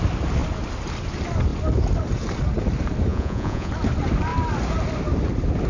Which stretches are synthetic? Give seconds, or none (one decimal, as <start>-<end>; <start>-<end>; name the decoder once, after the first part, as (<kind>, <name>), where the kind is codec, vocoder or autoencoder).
3.1-3.7 (vocoder, Vocos)

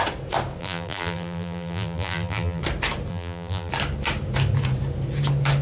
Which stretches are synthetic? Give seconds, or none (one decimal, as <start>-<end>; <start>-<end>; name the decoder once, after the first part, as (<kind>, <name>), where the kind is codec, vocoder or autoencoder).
0.6-2.6 (vocoder, BigVGAN v2); 3.1-3.7